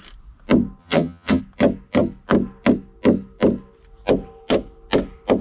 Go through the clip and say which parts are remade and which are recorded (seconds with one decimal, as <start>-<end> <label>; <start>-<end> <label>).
0.0-0.8 recorded; 0.8-1.4 remade; 1.4-5.4 recorded